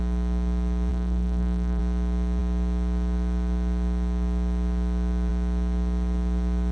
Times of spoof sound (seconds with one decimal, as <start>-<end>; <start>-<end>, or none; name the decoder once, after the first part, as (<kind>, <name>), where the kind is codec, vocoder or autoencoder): 0.9-1.8 (codec, SNAC)